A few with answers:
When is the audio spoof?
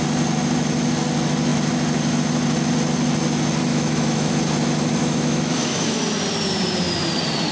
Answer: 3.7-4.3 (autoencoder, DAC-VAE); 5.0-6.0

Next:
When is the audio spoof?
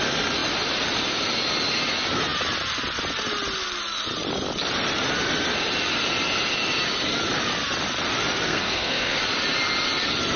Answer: 8.5-9.2 (codec, SNAC)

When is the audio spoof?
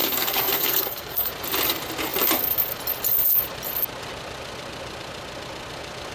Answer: 0.0-1.3 (codec, SNAC)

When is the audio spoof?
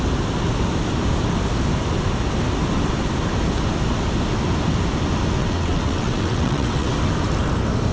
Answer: 5.4-6.9 (vocoder, WaveNeXt)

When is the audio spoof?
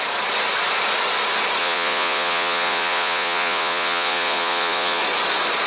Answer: 1.6-5.0 (vocoder, Vocos)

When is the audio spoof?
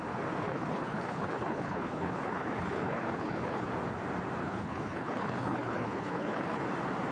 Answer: 0.4-3.7 (codec, HILCodec); 4.4-6.6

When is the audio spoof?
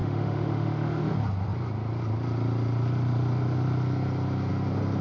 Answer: 0.0-1.1 (autoencoder, DAC-VAE)